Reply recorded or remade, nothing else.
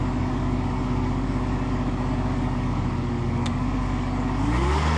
remade